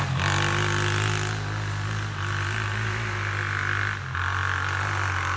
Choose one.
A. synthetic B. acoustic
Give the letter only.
B